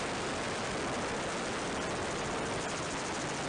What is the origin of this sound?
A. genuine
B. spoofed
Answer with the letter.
A